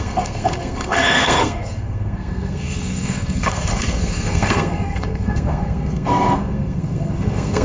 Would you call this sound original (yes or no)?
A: no